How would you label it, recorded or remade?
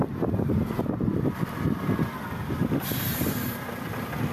recorded